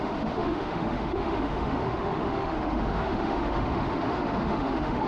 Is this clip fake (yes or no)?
yes